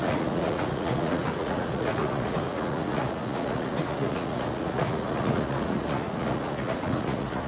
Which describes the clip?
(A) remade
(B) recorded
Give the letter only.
A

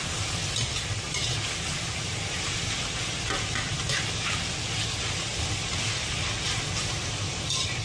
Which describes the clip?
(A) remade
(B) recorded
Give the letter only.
B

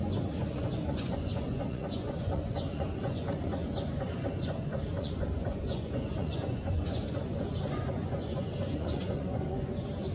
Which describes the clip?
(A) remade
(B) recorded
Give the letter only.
A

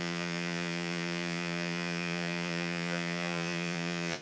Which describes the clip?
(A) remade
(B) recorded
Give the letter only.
A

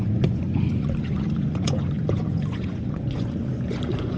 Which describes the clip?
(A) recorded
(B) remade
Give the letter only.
B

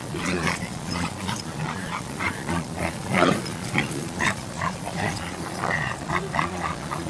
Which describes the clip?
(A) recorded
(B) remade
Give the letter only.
B